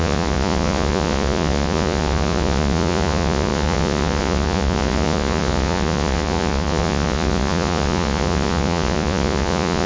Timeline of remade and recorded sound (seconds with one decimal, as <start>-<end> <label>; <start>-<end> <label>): 0.0-9.9 remade